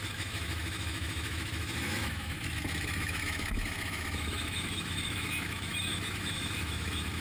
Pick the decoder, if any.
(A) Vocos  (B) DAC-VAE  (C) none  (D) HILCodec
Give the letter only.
B